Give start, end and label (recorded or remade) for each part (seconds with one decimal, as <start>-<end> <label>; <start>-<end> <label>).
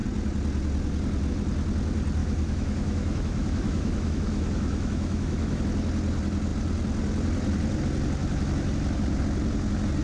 0.0-2.2 recorded; 2.2-5.6 remade; 5.6-10.0 recorded